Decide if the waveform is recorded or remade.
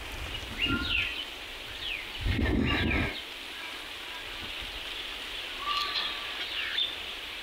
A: recorded